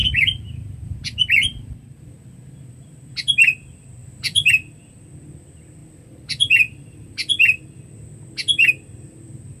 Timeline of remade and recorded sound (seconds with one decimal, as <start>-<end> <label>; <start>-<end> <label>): 0.0-3.1 remade; 3.1-4.0 recorded; 4.0-4.5 remade; 4.5-5.8 recorded; 5.8-7.6 remade; 7.6-9.6 recorded